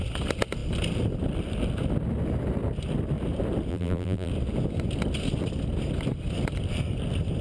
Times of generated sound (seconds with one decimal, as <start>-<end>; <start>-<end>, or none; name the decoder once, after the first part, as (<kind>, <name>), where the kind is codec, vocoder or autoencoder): 3.7-4.3 (vocoder, BigVGAN v2)